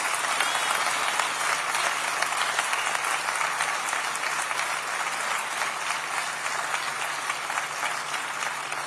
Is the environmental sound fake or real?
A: real